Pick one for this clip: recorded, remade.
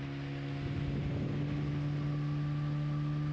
recorded